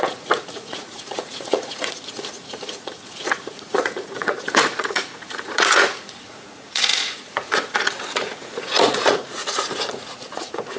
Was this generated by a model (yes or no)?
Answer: yes